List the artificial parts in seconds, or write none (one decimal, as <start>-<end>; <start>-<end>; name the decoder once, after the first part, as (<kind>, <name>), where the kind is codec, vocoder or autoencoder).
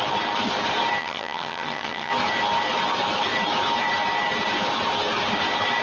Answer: 1.0-2.1 (vocoder, HiFi-GAN)